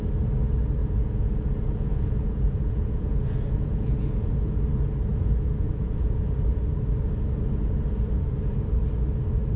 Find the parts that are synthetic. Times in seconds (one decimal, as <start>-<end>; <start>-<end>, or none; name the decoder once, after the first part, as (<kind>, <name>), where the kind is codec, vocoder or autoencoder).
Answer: 0.8-4.6 (vocoder, Vocos); 5.1-6.2